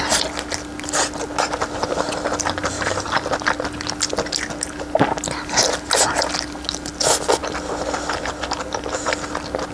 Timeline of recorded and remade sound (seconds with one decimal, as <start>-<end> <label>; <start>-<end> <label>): 0.0-2.6 recorded; 2.6-3.3 remade; 3.3-9.7 recorded